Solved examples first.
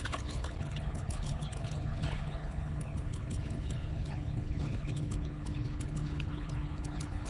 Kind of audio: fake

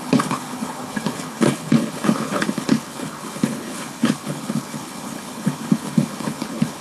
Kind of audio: fake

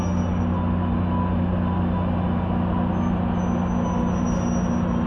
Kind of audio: real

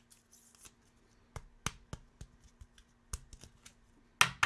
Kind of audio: real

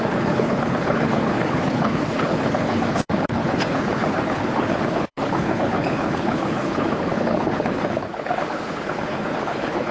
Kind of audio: fake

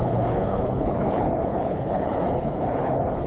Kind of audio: fake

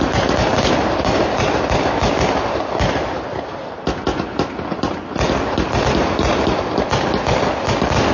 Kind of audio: real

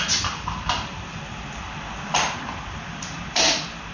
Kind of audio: real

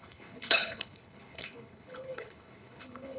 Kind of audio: fake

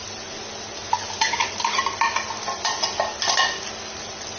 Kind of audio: real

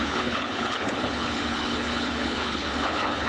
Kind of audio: fake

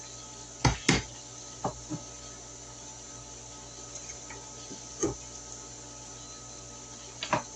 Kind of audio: real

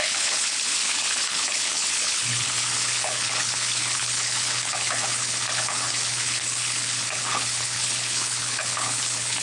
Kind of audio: fake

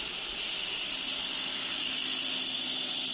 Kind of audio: real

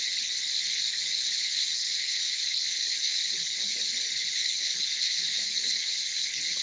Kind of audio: fake